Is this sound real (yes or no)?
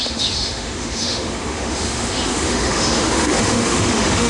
no